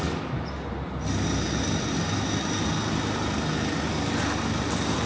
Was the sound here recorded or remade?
recorded